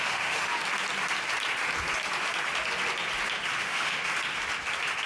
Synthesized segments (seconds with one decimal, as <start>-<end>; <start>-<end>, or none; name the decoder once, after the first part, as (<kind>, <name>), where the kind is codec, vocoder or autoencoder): 0.0-0.5 (autoencoder, DAC-VAE); 3.6-4.0